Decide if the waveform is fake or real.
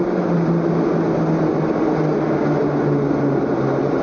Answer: real